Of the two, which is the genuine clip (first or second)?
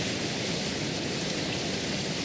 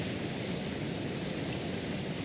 second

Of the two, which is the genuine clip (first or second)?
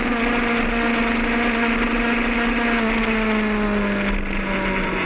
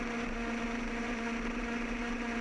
first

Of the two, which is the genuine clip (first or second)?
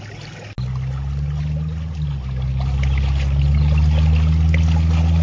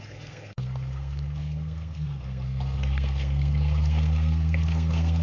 first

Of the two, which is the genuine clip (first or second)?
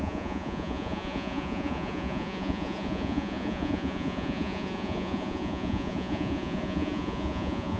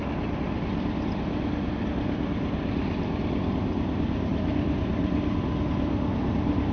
second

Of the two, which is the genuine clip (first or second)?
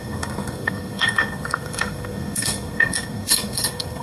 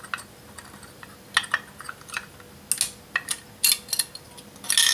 second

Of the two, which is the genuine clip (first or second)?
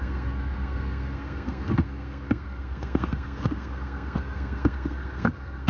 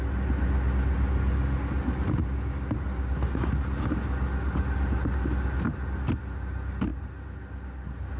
second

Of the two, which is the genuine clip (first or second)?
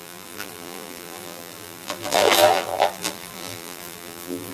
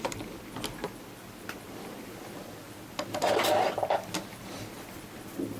second